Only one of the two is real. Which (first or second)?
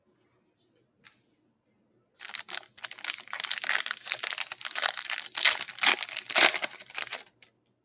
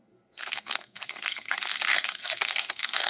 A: first